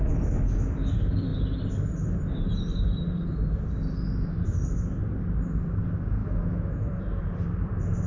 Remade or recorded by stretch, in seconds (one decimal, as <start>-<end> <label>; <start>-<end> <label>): 0.0-6.2 recorded; 6.2-7.0 remade; 7.0-8.1 recorded